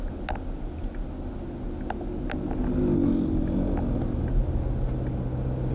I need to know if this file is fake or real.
real